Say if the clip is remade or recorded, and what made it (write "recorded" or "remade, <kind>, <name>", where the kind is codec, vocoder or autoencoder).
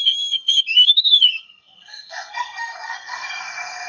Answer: remade, codec, SNAC